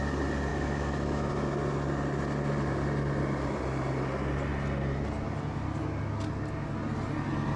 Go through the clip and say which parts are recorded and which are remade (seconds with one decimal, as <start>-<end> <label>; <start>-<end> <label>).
0.0-0.5 recorded; 0.5-1.3 remade; 1.3-7.6 recorded